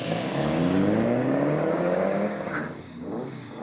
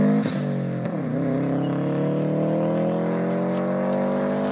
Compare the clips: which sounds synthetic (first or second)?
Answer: first